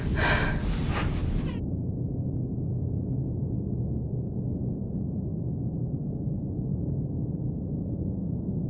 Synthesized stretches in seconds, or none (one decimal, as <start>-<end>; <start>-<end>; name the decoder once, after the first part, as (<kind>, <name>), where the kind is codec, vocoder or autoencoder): none